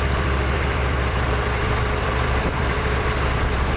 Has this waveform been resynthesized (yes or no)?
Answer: yes